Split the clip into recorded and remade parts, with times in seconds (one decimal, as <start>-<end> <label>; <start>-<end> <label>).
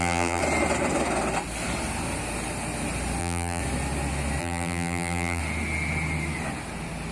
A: 0.0-0.4 remade; 0.4-3.2 recorded; 3.2-3.6 remade; 3.6-4.4 recorded; 4.4-5.4 remade; 5.4-7.1 recorded